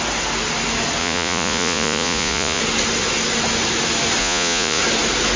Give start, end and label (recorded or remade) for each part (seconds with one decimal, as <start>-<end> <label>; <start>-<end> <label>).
0.0-1.0 recorded; 1.0-2.6 remade; 2.6-4.2 recorded; 4.2-4.8 remade; 4.8-5.4 recorded

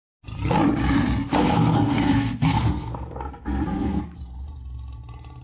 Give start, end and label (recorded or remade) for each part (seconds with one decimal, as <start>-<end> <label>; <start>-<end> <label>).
0.0-1.4 recorded; 1.4-4.0 remade; 4.0-5.4 recorded

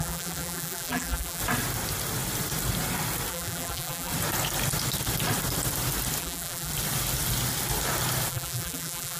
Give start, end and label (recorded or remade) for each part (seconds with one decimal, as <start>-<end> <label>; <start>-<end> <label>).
0.0-1.4 remade; 1.4-3.3 recorded; 3.3-4.1 remade; 4.1-6.2 recorded; 6.2-6.7 remade; 6.7-8.3 recorded; 8.3-9.2 remade

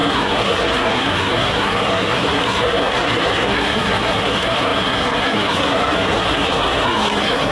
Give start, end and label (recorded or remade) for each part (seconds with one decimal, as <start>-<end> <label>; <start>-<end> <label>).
0.0-7.5 remade

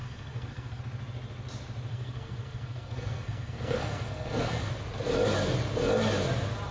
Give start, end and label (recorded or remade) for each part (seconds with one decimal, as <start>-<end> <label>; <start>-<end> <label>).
0.0-0.8 remade; 0.8-1.9 recorded; 1.9-4.7 remade; 4.7-6.7 recorded

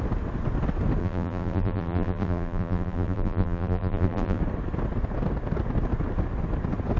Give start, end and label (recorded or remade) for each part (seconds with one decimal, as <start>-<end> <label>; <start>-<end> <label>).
0.0-1.0 recorded; 1.0-4.4 remade; 4.4-7.0 recorded

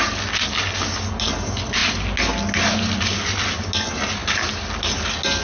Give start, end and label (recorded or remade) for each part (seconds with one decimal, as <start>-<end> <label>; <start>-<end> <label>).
0.0-5.4 recorded

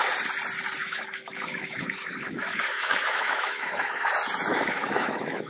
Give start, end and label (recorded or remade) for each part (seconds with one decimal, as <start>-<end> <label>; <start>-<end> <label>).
0.0-0.8 recorded; 0.8-4.1 remade; 4.1-4.5 recorded; 4.5-5.5 remade